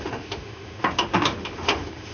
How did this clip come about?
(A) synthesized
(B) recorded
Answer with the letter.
A